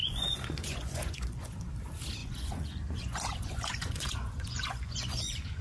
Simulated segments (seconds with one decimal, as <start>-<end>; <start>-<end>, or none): 0.0-1.7; 2.2-5.6

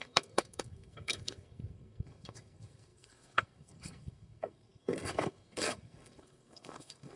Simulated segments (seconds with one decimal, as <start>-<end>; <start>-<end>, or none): 0.0-7.2

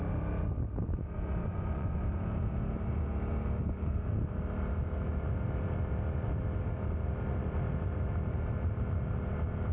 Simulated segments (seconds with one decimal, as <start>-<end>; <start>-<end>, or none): 1.4-2.0

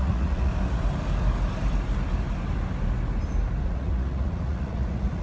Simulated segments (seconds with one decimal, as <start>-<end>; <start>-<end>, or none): 0.0-0.5; 3.6-5.2

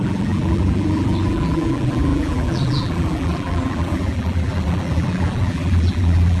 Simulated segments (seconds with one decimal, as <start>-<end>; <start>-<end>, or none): 0.0-6.4